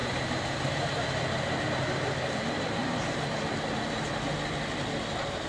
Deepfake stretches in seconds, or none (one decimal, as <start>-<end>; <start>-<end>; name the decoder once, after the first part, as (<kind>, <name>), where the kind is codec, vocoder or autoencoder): 0.0-3.3 (vocoder, BigVGAN v2)